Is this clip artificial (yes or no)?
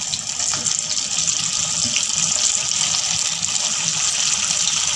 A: no